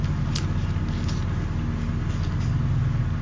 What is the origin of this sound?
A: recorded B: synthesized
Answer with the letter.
A